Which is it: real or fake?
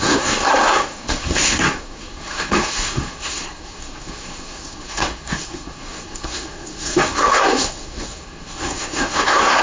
fake